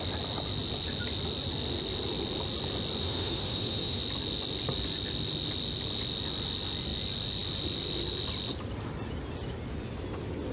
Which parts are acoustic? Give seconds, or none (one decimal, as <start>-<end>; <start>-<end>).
0.0-3.0; 4.0-10.5